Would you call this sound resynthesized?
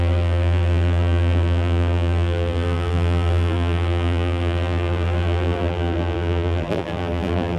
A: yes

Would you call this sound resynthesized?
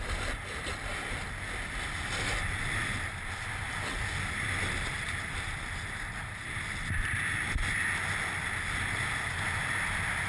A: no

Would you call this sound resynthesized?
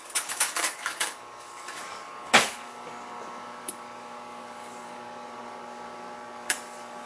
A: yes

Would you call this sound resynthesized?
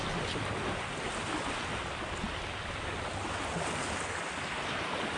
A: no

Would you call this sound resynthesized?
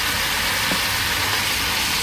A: no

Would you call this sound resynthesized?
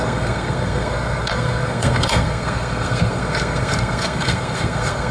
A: yes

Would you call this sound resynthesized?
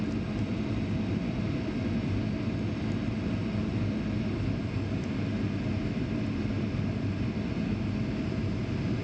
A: no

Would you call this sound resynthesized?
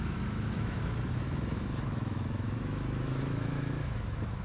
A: yes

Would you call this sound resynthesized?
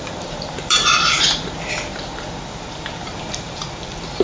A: yes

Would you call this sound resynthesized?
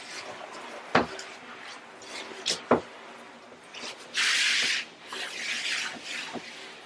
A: no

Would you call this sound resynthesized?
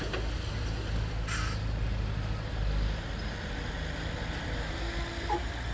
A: no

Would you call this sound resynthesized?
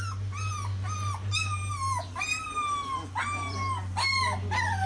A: no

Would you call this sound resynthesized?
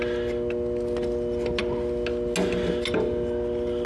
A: no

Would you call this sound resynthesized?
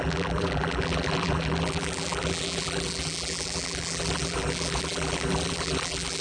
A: yes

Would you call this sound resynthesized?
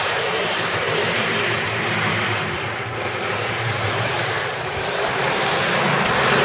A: yes